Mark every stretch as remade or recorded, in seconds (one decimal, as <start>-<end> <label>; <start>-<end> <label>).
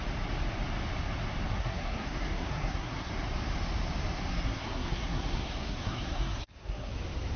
0.0-1.5 recorded; 1.5-3.1 remade; 3.1-4.3 recorded; 4.3-6.9 remade; 6.9-7.4 recorded